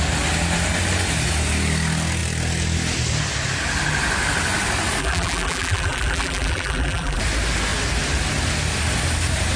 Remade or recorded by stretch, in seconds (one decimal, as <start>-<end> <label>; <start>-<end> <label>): 0.0-5.0 recorded; 5.0-7.2 remade; 7.2-9.6 recorded